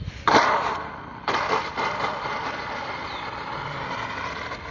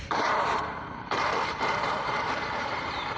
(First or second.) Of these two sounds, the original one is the first